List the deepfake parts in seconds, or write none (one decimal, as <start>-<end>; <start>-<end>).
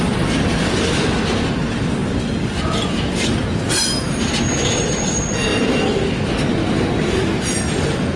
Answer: none